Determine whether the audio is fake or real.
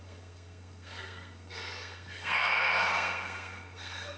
fake